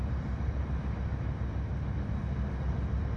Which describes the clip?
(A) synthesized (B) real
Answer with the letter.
B